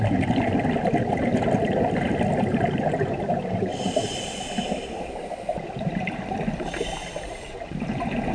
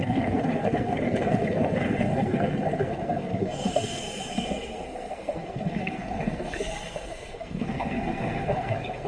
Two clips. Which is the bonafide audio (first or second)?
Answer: first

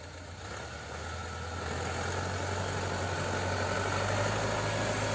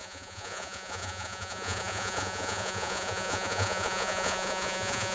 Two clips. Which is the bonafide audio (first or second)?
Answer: first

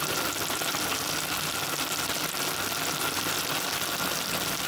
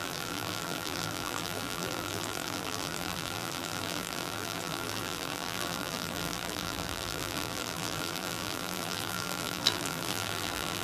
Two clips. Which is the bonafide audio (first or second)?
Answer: first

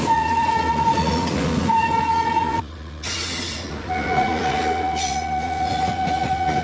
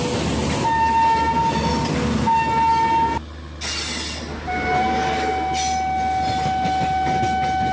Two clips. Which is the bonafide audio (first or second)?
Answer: second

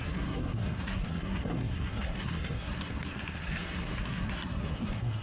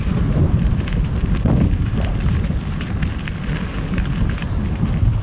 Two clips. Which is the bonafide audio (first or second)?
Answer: second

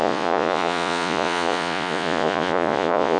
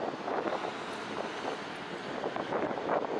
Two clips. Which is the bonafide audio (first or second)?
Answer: second